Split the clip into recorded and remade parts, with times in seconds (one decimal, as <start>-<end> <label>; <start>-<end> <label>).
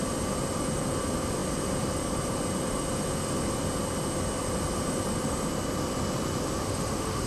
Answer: 0.0-6.6 recorded; 6.6-7.3 remade